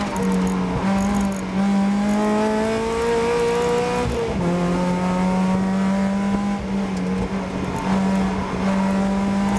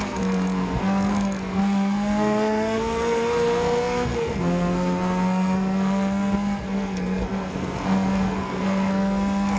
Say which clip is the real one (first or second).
first